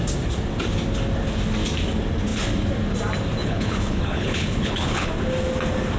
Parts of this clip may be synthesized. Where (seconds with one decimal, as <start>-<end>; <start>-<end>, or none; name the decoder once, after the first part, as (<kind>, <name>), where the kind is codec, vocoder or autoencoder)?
3.4-5.1 (codec, HILCodec)